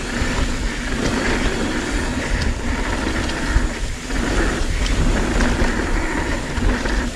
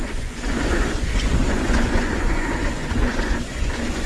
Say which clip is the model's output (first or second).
second